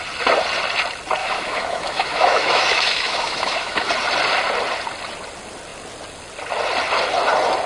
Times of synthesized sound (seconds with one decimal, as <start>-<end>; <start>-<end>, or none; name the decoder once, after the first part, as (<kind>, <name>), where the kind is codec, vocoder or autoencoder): 1.2-3.9 (autoencoder, DAC-VAE)